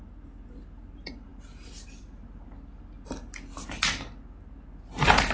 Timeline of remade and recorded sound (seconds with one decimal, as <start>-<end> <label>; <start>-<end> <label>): 0.0-5.3 recorded